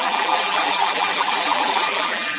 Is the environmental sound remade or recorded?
remade